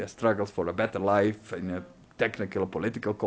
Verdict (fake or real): real